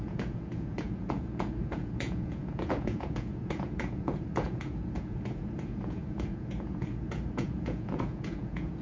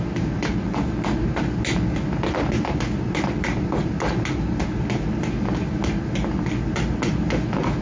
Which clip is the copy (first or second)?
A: first